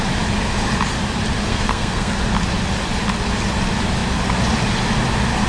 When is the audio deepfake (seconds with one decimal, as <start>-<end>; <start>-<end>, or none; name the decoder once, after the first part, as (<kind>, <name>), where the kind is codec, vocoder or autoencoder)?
1.5-2.1 (codec, SNAC)